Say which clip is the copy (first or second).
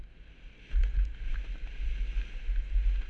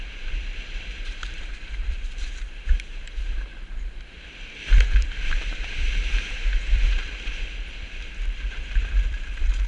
second